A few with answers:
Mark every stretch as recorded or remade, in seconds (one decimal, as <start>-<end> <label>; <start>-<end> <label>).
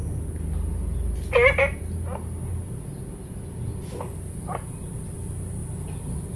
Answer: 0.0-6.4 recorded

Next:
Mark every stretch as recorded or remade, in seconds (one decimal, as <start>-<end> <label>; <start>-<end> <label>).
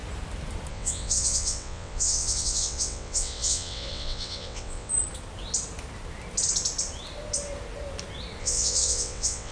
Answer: 0.0-0.7 recorded; 0.7-4.9 remade; 4.9-8.4 recorded; 8.4-9.5 remade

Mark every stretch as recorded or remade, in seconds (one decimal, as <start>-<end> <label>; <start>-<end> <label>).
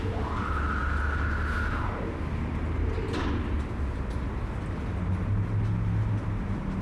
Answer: 0.0-6.8 recorded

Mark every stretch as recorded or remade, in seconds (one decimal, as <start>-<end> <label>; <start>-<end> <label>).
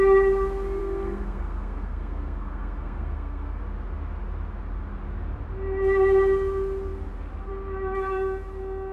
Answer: 0.0-0.8 recorded; 0.8-3.6 remade; 3.6-8.9 recorded